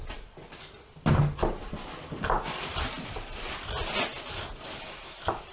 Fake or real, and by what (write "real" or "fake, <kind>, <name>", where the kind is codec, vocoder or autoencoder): real